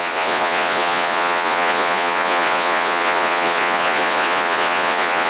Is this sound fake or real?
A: fake